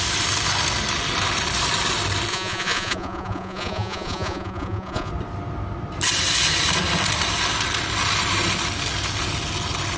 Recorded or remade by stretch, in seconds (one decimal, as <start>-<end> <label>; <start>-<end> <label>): 0.0-2.3 recorded; 2.3-5.1 remade; 5.1-10.0 recorded